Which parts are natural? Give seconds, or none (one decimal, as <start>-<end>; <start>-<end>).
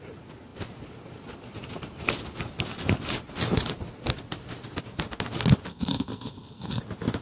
0.0-5.7; 6.8-7.2